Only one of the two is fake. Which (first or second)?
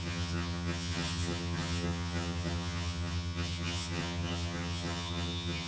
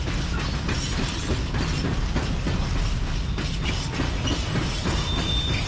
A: first